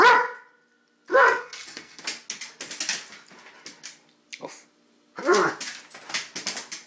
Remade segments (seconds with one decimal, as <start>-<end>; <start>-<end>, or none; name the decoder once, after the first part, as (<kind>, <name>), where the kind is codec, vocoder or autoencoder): 1.1-2.0 (codec, SNAC)